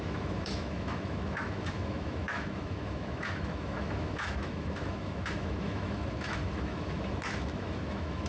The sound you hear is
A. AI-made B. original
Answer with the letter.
A